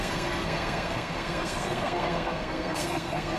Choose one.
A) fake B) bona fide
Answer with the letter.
A